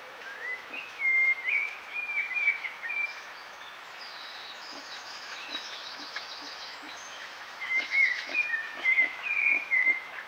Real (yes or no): no